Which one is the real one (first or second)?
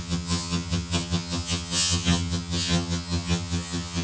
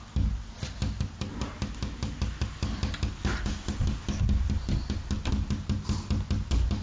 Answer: second